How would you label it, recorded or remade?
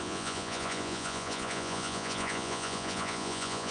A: remade